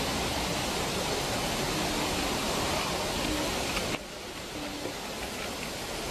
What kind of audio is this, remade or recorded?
recorded